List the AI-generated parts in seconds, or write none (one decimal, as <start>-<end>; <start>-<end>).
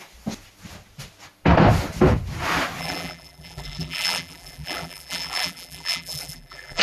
2.8-6.8